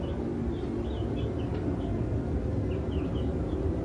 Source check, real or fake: real